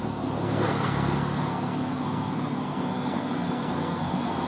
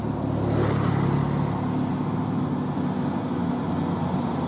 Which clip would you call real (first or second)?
second